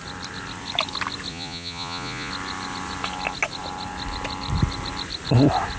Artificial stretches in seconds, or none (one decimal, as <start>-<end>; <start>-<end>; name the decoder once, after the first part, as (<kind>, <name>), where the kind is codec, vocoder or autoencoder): 1.3-2.3 (vocoder, Vocos)